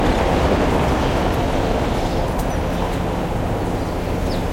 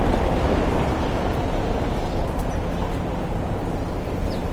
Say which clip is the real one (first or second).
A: first